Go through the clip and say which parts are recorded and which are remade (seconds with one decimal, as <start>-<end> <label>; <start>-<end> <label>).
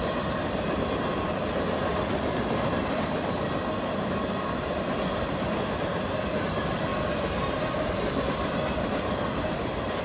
0.0-10.0 recorded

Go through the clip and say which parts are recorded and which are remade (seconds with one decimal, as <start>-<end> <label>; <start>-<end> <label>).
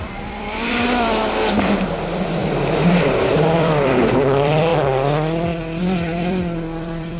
0.0-1.2 remade; 1.2-1.8 recorded; 1.8-2.4 remade; 2.4-3.0 recorded; 3.0-4.7 remade; 4.7-5.8 recorded; 5.8-7.2 remade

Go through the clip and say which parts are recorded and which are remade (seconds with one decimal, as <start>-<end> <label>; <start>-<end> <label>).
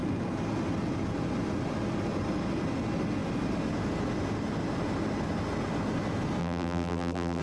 0.0-6.4 recorded; 6.4-7.4 remade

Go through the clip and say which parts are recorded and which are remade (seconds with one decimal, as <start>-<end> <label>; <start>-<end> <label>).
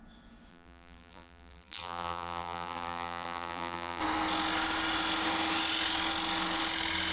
0.0-0.5 recorded; 0.5-4.0 remade; 4.0-7.1 recorded